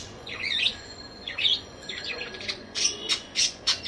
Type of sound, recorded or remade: remade